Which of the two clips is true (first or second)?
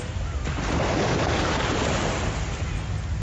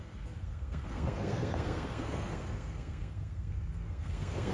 first